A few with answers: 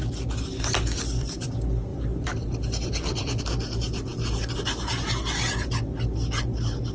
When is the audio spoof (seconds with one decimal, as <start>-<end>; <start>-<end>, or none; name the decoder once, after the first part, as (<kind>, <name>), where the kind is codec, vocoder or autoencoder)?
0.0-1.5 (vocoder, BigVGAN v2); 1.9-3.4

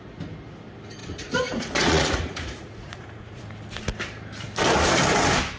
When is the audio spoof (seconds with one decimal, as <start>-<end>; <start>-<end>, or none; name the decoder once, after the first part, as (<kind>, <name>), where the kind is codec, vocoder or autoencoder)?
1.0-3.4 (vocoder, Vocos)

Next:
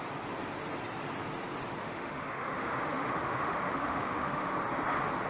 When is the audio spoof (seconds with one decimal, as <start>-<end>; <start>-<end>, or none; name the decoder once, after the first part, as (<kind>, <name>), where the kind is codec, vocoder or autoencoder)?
1.8-4.5 (autoencoder, DAC-VAE)

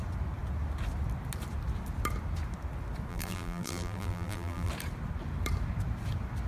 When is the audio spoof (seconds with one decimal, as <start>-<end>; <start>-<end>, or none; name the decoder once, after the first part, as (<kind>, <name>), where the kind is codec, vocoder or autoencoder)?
3.1-4.7 (vocoder, BigVGAN v2)